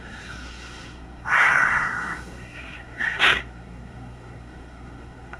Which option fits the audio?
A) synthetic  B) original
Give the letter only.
A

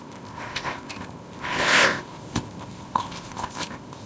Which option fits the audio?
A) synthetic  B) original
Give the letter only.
A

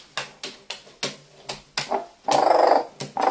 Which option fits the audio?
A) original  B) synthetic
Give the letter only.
A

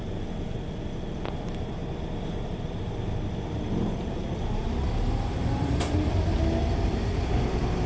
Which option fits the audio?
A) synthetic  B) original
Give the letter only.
A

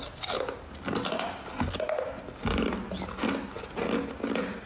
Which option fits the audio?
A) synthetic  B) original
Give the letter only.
B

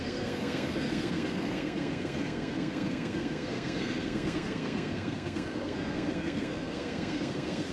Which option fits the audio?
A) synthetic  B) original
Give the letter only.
A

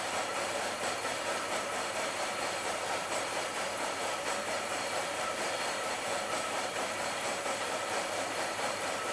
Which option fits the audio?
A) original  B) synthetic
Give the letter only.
B